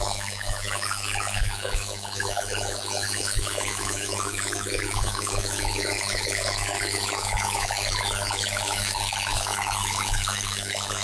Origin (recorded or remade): remade